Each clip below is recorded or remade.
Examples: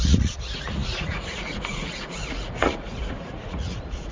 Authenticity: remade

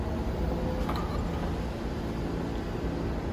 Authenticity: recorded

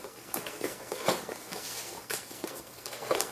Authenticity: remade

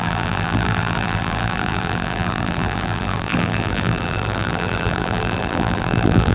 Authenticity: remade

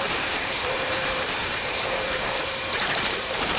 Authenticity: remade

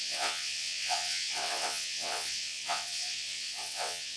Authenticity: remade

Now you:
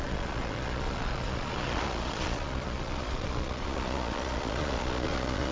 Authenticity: remade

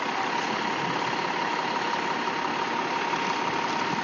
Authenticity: recorded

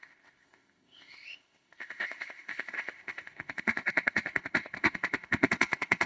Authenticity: remade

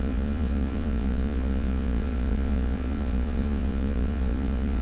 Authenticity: remade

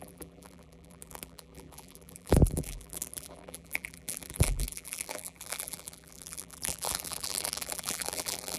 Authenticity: remade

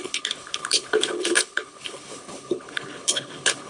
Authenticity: remade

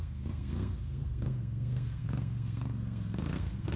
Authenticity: remade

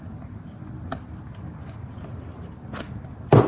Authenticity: recorded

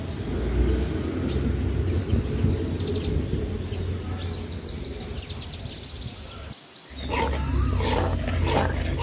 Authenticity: recorded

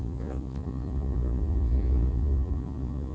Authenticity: remade